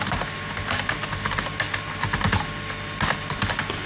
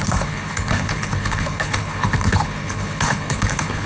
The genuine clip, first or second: first